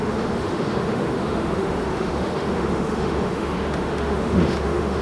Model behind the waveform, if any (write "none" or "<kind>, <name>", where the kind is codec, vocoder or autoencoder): autoencoder, DAC-VAE